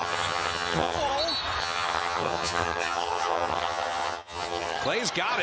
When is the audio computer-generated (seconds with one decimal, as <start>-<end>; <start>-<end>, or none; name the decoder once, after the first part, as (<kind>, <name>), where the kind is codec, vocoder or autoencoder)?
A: 0.0-1.0 (vocoder, HiFi-GAN); 1.6-4.8